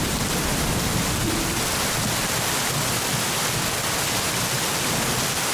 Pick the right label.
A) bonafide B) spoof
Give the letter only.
A